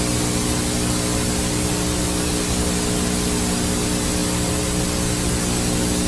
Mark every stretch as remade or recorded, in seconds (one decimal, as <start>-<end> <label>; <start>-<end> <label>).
0.0-6.1 recorded

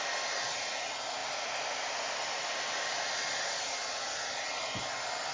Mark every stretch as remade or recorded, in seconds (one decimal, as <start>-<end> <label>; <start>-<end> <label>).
0.0-5.3 recorded